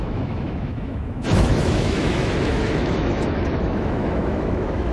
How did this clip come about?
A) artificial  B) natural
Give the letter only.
A